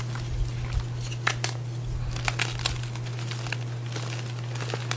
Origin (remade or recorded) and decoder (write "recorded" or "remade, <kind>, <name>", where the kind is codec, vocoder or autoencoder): recorded